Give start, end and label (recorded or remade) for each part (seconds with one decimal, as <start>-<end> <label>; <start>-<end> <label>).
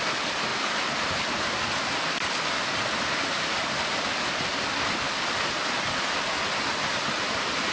0.0-0.5 remade; 0.5-5.0 recorded; 5.0-7.7 remade